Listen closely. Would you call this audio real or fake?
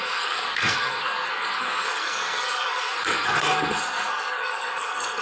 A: fake